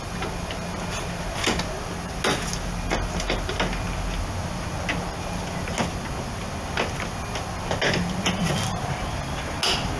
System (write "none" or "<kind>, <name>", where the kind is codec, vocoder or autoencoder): none